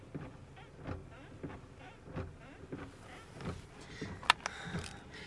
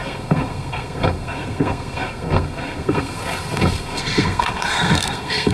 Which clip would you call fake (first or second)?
second